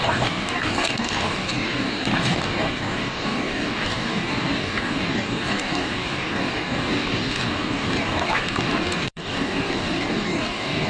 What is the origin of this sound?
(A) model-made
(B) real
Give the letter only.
A